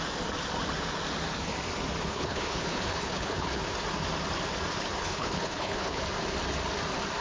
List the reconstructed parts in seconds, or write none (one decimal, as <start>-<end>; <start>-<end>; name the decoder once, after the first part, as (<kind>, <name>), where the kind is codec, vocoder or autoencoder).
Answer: 2.1-3.6 (codec, HILCodec); 5.0-6.0